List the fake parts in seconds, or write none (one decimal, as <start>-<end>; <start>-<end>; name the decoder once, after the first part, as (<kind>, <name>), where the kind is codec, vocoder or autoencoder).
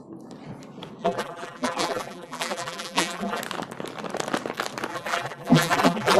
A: 1.0-3.4 (vocoder, BigVGAN v2); 4.9-6.2